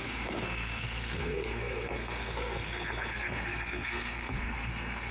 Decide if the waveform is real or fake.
fake